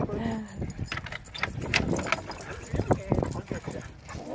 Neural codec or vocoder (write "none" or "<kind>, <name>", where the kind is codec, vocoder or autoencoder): none